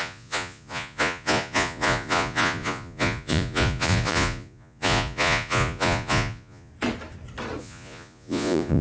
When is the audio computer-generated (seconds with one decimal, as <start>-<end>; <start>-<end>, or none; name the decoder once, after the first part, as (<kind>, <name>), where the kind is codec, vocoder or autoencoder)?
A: 0.0-6.7 (vocoder, Vocos); 7.6-8.8